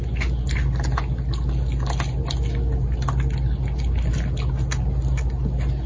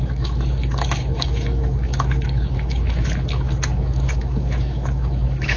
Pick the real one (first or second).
first